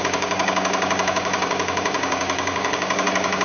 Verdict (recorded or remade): remade